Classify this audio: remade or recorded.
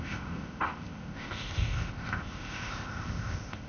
remade